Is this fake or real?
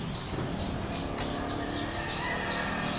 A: real